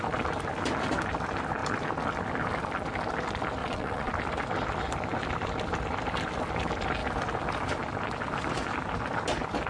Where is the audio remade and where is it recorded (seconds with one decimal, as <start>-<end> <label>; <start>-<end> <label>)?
0.0-3.6 recorded; 3.6-4.1 remade; 4.1-9.7 recorded